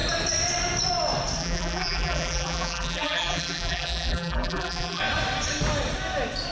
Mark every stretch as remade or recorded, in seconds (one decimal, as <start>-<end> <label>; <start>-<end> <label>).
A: 0.0-1.4 recorded; 1.4-5.0 remade; 5.0-6.5 recorded